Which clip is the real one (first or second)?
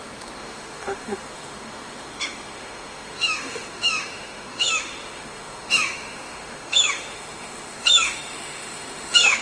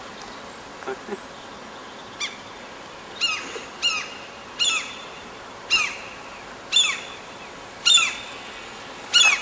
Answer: second